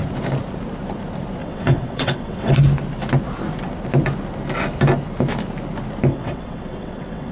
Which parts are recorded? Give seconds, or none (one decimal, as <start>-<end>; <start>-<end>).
0.0-1.4; 2.5-6.1